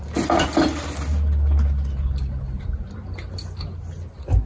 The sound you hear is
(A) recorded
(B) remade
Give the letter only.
A